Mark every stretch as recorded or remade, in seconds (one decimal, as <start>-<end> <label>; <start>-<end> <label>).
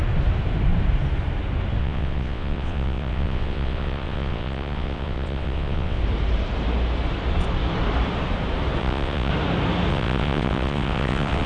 0.0-1.8 recorded; 1.8-6.0 remade; 6.0-8.8 recorded; 8.8-9.3 remade; 9.3-9.9 recorded; 9.9-11.5 remade